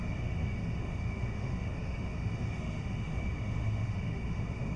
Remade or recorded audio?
remade